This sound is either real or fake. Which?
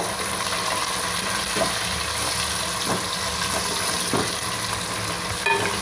real